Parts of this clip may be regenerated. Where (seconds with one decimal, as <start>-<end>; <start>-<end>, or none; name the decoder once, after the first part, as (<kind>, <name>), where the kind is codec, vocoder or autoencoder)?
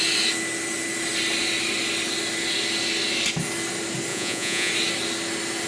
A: 4.1-4.7 (vocoder, Vocos)